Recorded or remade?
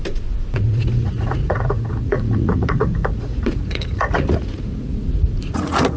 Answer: remade